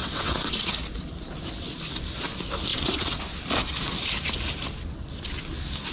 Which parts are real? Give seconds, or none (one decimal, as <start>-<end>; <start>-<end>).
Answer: 0.5-2.7; 3.2-5.9